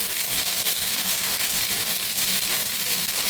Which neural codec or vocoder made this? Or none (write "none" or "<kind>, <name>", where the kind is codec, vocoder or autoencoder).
codec, DAC